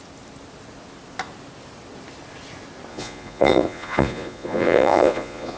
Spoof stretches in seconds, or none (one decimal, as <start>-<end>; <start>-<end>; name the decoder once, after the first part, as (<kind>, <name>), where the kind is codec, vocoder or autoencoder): 2.9-5.6 (vocoder, Vocos)